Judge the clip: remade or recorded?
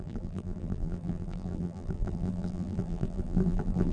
remade